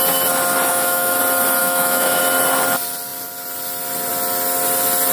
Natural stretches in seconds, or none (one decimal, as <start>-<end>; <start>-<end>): 0.0-0.7; 1.2-1.6; 2.2-5.1